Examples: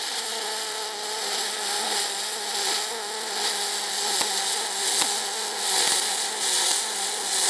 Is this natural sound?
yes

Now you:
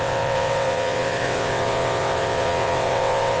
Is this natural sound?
no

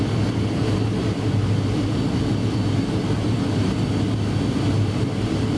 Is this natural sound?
yes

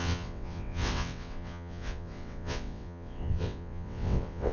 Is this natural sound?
no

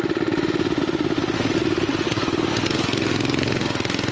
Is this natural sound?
yes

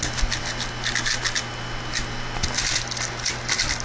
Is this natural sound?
yes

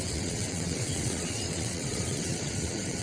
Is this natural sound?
no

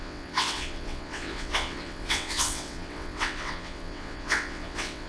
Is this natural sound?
no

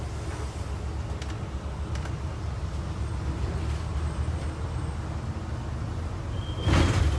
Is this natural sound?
yes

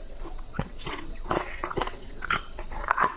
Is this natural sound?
no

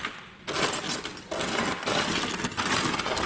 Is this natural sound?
yes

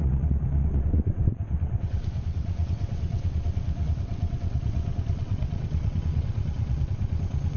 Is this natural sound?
no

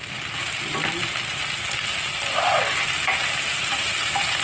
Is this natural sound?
yes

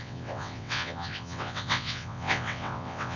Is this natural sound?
no